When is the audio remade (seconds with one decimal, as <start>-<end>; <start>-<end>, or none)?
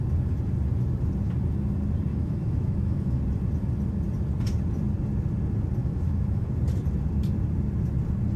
2.1-3.2; 5.8-6.5